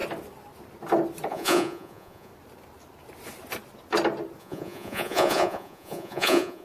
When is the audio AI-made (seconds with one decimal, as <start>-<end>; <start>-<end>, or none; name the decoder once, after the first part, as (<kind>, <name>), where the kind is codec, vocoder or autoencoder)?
1.3-2.3 (vocoder, Vocos); 4.4-6.6